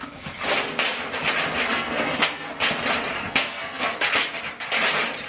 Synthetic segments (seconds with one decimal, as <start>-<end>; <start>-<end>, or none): 1.7-2.5; 3.2-4.0